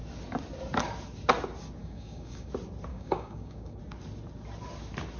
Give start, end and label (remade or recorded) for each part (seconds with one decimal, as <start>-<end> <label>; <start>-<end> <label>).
0.0-1.8 recorded; 1.8-2.5 remade; 2.5-2.9 recorded; 2.9-3.8 remade; 3.8-5.2 recorded